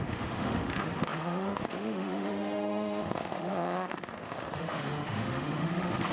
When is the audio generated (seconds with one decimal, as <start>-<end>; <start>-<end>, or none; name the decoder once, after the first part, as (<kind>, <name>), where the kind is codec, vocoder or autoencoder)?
0.0-6.1 (autoencoder, DAC-VAE)